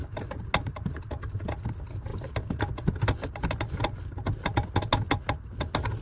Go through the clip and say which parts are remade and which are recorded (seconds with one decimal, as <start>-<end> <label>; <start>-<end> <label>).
0.0-6.0 recorded